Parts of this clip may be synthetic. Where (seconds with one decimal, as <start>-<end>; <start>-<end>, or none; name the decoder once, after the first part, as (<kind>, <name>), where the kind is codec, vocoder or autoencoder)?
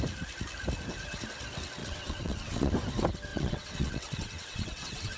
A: 1.8-2.7 (vocoder, WaveNeXt); 3.3-5.2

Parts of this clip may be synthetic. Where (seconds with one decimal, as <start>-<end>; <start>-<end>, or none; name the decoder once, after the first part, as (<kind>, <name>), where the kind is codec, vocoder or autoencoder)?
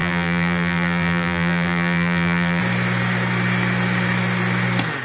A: 0.0-2.6 (vocoder, BigVGAN v2)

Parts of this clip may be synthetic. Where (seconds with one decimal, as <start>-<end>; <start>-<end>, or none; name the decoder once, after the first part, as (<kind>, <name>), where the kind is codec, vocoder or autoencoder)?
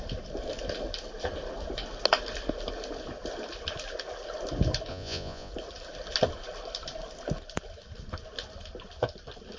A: 4.9-5.5 (vocoder, Vocos)